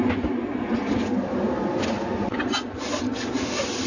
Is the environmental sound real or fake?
real